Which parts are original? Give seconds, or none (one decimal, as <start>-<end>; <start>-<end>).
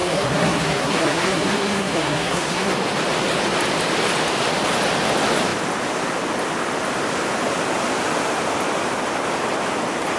2.7-10.2